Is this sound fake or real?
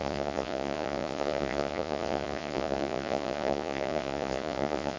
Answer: fake